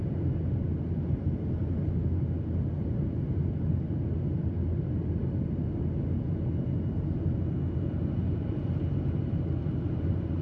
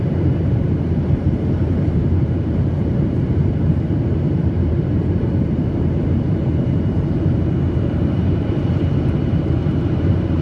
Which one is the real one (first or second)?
first